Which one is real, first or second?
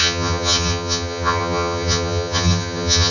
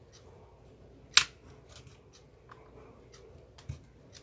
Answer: second